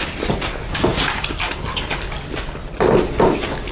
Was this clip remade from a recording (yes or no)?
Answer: no